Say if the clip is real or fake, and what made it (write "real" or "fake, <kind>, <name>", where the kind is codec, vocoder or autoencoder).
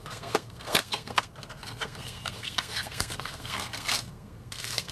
fake, codec, SNAC